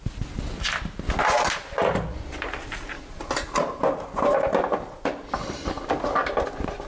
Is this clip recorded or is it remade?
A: recorded